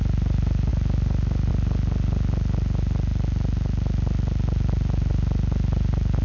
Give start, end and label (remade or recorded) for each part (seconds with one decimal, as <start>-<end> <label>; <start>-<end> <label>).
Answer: 0.0-6.2 recorded